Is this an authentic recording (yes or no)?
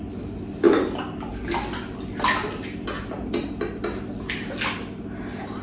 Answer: yes